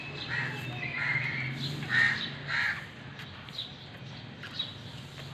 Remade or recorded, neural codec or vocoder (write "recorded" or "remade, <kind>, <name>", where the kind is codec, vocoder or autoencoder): recorded